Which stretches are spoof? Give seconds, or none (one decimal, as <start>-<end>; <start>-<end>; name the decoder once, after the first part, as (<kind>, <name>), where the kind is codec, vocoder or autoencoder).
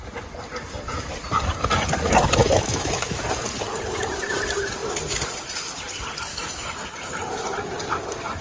2.4-3.2 (autoencoder, DAC-VAE); 6.3-6.9